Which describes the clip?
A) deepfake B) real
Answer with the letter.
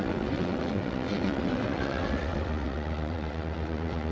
A